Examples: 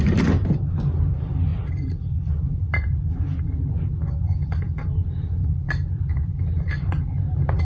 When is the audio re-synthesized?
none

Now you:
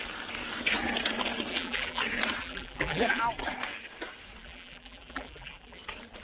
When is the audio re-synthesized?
1.5-2.0 (vocoder, BigVGAN v2); 2.4-3.2; 4.4-5.8

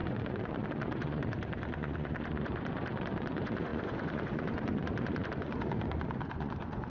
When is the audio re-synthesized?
0.0-6.9 (vocoder, Vocos)

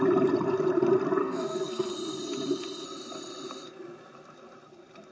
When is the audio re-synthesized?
1.2-1.9 (codec, SNAC)

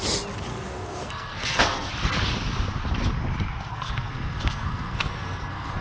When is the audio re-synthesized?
0.5-1.9 (codec, SNAC); 3.7-5.8